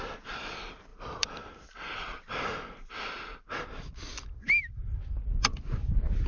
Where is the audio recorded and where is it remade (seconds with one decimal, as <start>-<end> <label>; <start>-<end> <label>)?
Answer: 0.0-0.9 recorded; 0.9-1.4 remade; 1.4-6.3 recorded